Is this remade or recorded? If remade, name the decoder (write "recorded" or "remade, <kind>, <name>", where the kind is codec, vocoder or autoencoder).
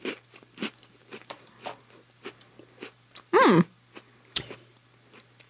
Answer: remade, vocoder, BigVGAN v2